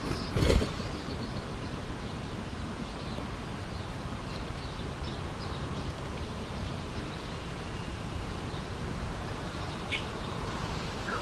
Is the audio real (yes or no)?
no